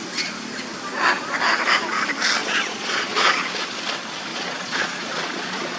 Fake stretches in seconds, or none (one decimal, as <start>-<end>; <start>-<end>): 2.4-3.8; 4.3-5.8